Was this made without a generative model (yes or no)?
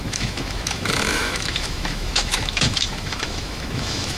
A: no